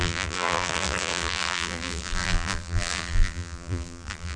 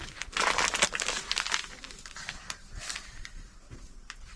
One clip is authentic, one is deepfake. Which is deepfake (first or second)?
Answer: first